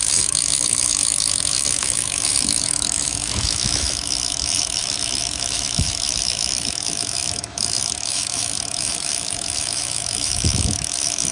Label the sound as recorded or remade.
remade